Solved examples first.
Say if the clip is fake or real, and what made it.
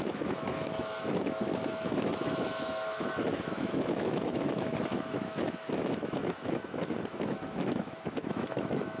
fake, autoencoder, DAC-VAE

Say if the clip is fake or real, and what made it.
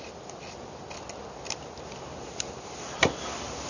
real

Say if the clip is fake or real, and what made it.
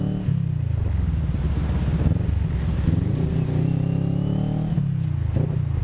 real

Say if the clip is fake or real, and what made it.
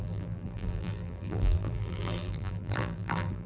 fake, vocoder, BigVGAN v2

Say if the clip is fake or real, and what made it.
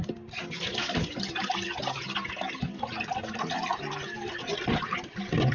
real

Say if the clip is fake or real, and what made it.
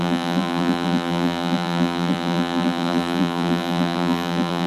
fake, vocoder, BigVGAN v2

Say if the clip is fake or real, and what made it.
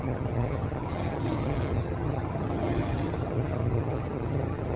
fake, vocoder, HiFi-GAN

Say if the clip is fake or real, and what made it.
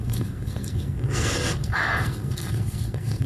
fake, codec, SNAC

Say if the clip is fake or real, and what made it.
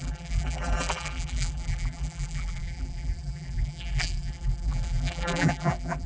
fake, vocoder, BigVGAN v2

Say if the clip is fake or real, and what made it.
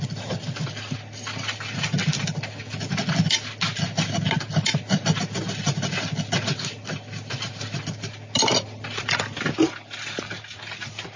real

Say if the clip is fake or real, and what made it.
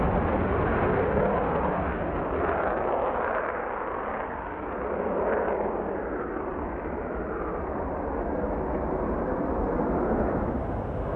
real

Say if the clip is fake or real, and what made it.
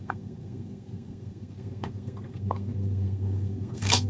fake, codec, SNAC